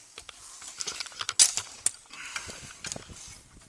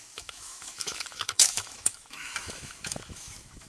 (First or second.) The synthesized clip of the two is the second